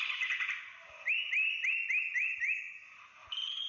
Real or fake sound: real